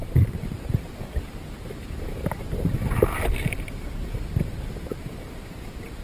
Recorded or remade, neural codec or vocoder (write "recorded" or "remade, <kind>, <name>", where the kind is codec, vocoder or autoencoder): remade, vocoder, BigVGAN v2